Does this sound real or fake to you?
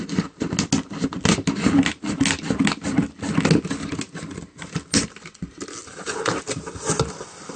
real